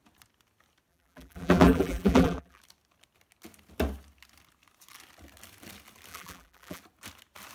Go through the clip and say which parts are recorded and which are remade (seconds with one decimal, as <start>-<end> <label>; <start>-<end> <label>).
0.0-0.9 recorded; 0.9-2.6 remade; 2.6-6.1 recorded; 6.1-6.8 remade; 6.8-7.5 recorded